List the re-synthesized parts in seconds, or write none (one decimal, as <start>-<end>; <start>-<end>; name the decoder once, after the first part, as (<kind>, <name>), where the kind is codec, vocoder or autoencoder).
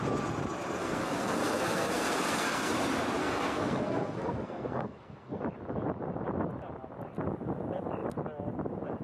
0.8-2.7 (codec, SNAC); 3.2-5.4